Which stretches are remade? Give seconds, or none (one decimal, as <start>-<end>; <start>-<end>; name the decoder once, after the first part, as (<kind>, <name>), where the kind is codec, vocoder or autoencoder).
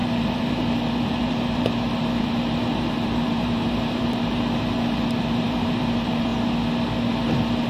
0.0-6.3 (vocoder, BigVGAN v2); 7.1-7.7